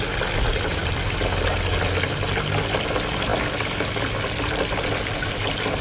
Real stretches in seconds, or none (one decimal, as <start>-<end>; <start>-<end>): 0.0-5.8